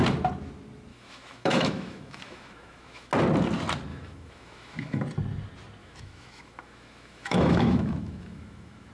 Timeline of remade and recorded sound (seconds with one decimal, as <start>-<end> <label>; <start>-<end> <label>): 0.0-0.9 recorded; 0.9-3.1 remade; 3.1-3.9 recorded; 3.9-5.0 remade; 5.0-5.8 recorded; 5.8-8.9 remade